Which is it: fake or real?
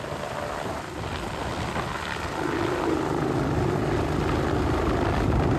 real